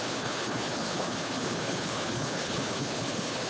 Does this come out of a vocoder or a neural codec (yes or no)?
yes